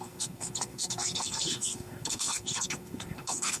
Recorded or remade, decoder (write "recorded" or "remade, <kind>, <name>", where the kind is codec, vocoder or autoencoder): remade, codec, SNAC